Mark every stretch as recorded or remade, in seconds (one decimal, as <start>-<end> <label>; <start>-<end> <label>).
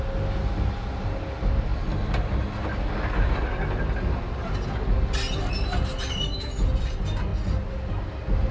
0.0-8.5 recorded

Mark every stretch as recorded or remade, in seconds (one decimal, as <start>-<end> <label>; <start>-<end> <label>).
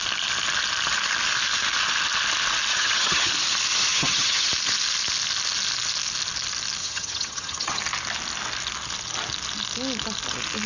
0.0-2.7 recorded; 2.7-3.3 remade; 3.3-3.7 recorded; 3.7-4.5 remade; 4.5-6.8 recorded; 6.8-7.8 remade; 7.8-10.7 recorded